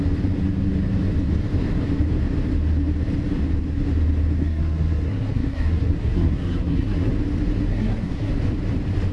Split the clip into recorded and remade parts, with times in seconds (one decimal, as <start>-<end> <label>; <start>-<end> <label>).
0.0-4.4 recorded; 4.4-7.1 remade; 7.1-7.7 recorded; 7.7-8.3 remade; 8.3-9.1 recorded